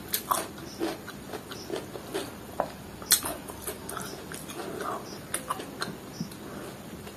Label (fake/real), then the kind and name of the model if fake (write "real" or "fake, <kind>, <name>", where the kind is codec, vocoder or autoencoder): real